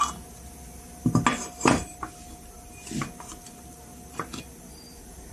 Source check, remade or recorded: recorded